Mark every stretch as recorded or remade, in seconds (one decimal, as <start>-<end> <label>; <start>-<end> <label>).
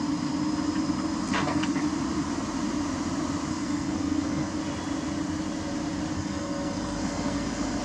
0.0-1.3 recorded; 1.3-1.8 remade; 1.8-3.5 recorded; 3.5-4.5 remade; 4.5-6.1 recorded; 6.1-7.8 remade